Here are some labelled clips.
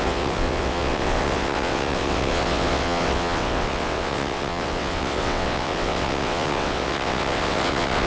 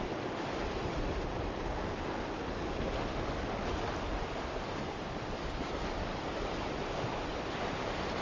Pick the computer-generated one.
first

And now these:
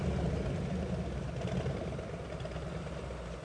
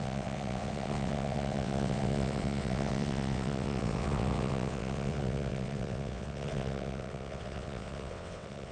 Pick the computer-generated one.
second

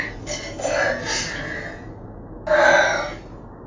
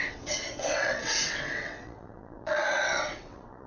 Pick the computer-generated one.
second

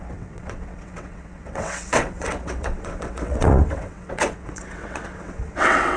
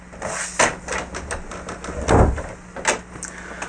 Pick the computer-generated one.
first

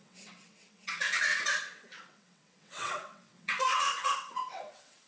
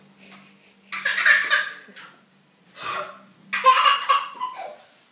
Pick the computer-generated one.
first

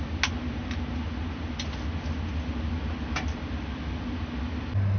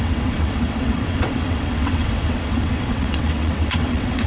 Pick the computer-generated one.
second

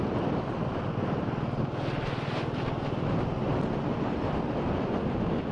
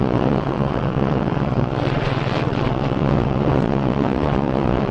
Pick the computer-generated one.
second